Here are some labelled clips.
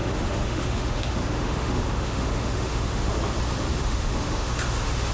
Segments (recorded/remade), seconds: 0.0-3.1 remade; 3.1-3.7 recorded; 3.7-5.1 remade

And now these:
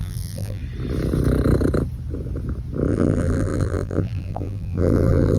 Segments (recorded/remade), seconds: 0.0-0.6 remade; 0.6-2.9 recorded; 2.9-5.4 remade

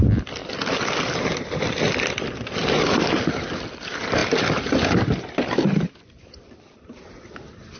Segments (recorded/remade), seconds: 0.0-7.8 recorded